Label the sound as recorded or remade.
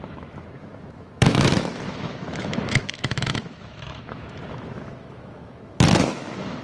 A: remade